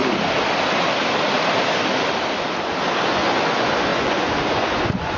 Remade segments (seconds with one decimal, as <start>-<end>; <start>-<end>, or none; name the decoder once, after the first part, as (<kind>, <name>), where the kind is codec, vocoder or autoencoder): 3.1-5.2 (vocoder, Vocos)